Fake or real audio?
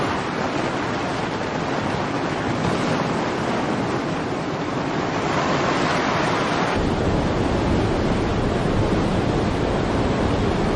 real